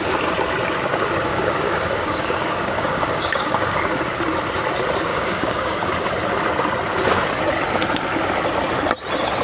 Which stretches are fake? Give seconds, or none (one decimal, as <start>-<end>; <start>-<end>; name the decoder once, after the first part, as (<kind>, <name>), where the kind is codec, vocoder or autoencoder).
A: 1.3-4.0 (codec, DAC); 5.1-5.8